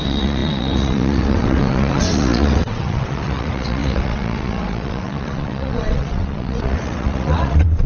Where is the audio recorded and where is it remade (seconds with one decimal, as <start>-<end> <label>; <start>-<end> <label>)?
0.0-7.9 remade